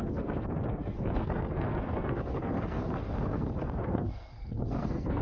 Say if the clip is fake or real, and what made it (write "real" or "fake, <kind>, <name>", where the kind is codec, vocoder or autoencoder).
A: fake, codec, SNAC